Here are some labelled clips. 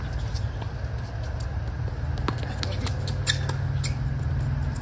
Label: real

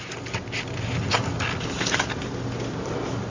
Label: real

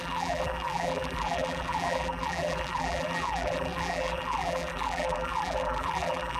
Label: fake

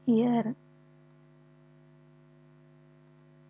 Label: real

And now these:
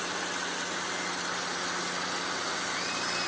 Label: real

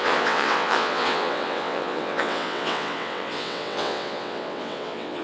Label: fake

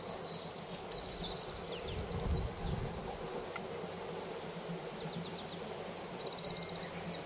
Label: real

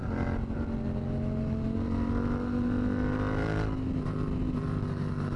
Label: real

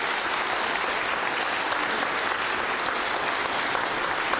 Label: real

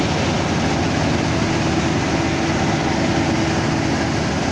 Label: real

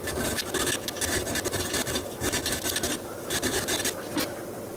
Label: real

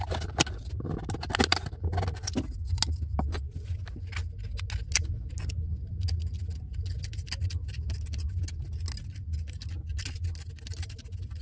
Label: real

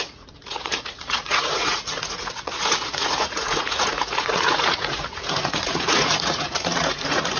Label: fake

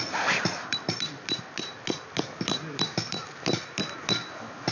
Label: real